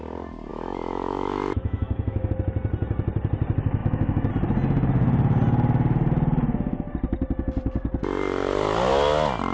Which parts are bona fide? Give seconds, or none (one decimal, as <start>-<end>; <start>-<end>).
0.0-0.5; 2.3-3.8; 4.3-9.5